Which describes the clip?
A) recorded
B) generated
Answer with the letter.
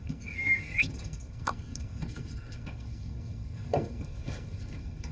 B